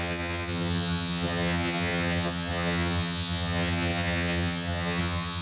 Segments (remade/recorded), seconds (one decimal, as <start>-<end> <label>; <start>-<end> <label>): 0.0-5.4 remade